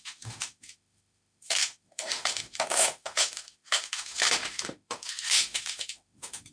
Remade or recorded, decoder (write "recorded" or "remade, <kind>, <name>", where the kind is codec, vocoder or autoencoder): remade, autoencoder, DAC-VAE